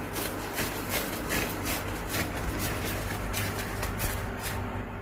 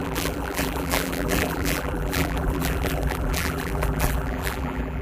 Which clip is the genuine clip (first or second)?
first